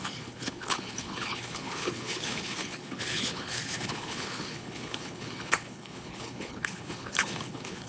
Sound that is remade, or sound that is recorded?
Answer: remade